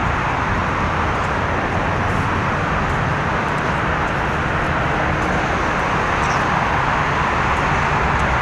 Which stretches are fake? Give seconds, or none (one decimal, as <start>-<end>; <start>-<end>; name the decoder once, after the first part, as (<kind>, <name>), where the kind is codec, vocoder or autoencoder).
none